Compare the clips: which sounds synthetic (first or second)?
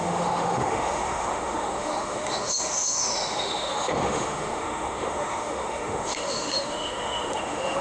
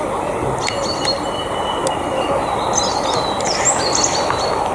first